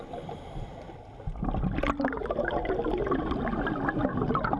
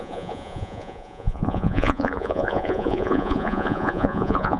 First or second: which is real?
first